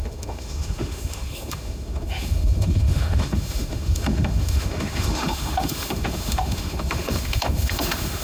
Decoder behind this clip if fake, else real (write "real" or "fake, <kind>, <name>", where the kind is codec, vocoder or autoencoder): fake, autoencoder, DAC-VAE